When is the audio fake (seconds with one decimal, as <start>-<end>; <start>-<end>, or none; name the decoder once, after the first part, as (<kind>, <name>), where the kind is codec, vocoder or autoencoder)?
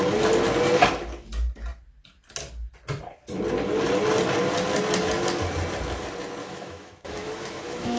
6.4-8.0 (autoencoder, DAC-VAE)